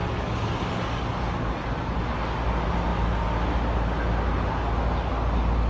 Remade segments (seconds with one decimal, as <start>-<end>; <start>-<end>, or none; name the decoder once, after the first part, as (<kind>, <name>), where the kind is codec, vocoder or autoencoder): none